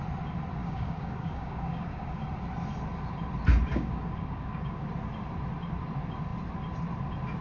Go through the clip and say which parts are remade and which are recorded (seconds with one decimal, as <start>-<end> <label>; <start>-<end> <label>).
0.0-0.6 recorded; 0.6-2.2 remade; 2.2-3.7 recorded; 3.7-4.9 remade; 4.9-7.4 recorded